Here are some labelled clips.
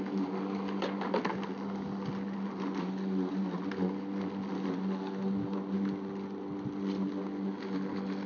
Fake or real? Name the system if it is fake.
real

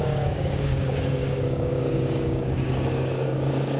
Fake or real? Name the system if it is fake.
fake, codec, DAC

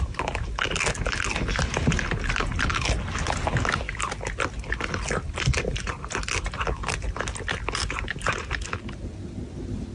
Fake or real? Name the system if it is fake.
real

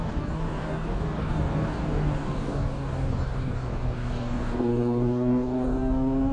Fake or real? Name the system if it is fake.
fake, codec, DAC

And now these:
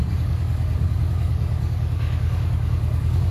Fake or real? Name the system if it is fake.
fake, codec, DAC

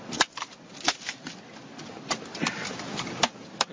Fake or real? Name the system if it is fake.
real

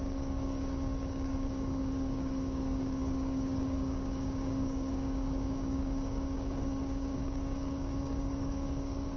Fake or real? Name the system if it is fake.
fake, codec, DAC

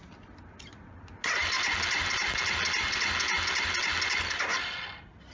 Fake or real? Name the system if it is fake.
real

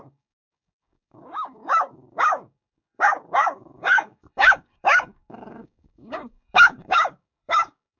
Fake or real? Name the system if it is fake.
fake, codec, DAC